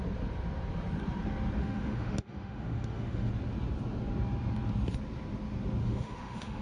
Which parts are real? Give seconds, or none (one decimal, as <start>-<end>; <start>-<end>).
0.0-1.6; 3.3-5.8